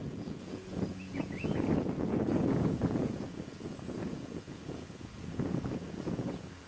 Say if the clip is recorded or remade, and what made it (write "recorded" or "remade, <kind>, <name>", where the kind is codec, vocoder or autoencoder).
remade, vocoder, Vocos